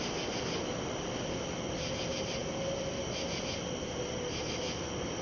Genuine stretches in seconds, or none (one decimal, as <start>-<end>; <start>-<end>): 0.0-5.2